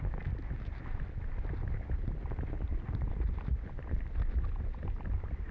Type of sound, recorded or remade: recorded